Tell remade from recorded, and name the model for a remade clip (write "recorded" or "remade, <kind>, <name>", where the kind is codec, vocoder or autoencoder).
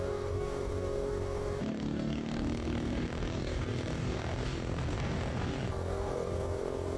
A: remade, codec, DAC